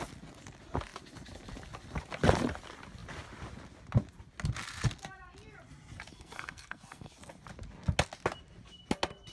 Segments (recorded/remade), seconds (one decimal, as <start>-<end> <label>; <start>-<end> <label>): 0.0-6.1 recorded; 6.1-7.1 remade; 7.1-9.3 recorded